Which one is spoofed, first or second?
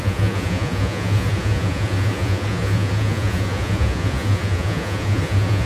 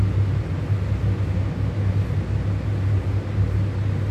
first